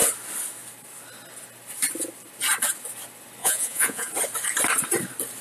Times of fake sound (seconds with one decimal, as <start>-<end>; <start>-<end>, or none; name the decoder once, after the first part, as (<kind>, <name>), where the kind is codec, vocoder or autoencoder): 3.4-4.1 (vocoder, Vocos)